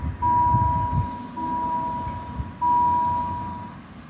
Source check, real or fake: real